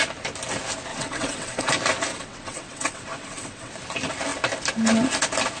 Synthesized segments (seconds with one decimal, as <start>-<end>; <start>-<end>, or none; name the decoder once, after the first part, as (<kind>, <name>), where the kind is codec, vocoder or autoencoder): 0.9-1.7 (vocoder, WaveNeXt); 2.1-3.7